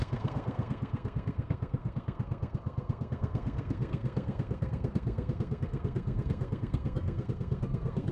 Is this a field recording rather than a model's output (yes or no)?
no